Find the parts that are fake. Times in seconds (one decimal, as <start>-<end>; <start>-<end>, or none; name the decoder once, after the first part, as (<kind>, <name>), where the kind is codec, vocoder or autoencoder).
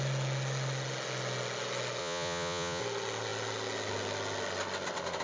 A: 2.0-2.8 (vocoder, Vocos)